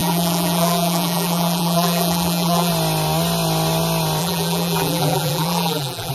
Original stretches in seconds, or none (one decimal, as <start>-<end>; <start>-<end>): 2.7-4.2